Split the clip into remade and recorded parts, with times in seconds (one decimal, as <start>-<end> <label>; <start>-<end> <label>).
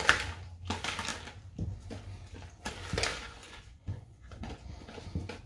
0.0-3.1 recorded; 3.1-5.0 remade; 5.0-5.5 recorded